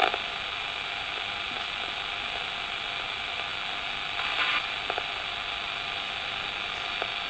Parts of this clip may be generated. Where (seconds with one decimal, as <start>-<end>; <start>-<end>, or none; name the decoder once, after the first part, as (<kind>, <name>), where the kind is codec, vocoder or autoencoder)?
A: none